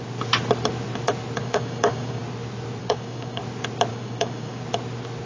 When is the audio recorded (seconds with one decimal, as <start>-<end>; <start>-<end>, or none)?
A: 0.0-1.4; 2.2-2.8; 3.4-3.9; 4.6-5.3